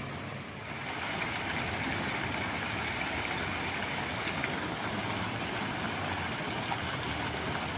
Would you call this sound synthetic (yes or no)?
no